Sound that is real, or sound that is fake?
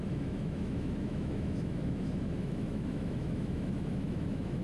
fake